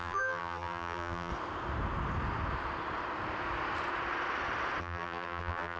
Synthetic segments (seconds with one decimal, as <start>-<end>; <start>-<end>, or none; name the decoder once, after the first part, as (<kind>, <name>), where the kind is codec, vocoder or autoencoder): 0.0-1.3 (vocoder, BigVGAN v2); 4.8-5.8